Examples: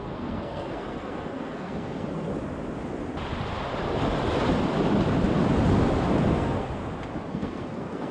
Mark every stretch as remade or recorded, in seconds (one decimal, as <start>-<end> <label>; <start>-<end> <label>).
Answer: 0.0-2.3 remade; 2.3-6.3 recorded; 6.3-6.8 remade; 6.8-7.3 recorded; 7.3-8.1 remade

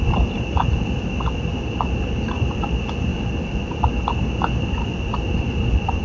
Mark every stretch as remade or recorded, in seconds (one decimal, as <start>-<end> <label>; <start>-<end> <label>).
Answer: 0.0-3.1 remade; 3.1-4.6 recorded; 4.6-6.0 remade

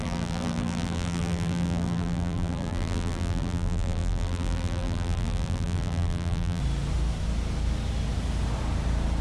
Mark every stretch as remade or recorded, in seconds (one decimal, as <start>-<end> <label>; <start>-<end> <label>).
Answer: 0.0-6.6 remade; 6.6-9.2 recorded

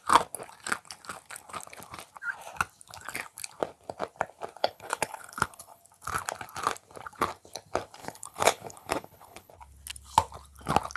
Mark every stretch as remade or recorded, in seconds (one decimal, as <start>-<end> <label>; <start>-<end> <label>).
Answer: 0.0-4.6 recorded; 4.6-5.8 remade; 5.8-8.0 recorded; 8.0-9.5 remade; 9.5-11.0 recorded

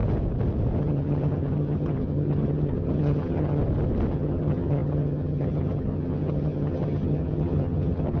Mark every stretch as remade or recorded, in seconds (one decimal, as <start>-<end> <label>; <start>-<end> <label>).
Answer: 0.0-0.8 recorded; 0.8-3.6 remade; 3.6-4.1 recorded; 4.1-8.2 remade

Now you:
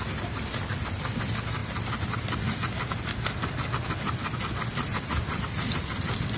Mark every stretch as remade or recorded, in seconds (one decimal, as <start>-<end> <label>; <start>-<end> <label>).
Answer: 0.0-6.4 recorded

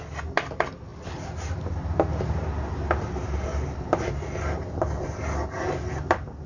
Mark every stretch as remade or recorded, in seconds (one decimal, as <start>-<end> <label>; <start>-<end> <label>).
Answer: 0.0-6.5 recorded